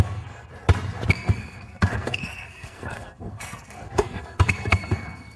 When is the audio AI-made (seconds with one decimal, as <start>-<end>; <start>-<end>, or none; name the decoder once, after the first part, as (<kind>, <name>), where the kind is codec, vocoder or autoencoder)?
0.0-0.5 (codec, SNAC); 1.1-5.4